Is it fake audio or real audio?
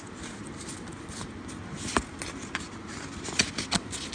real